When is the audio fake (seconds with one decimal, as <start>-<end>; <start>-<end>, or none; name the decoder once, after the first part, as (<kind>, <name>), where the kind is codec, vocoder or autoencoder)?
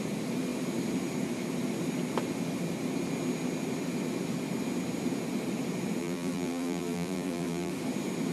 6.0-7.7 (vocoder, BigVGAN v2)